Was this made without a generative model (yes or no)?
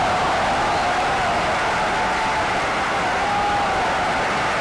yes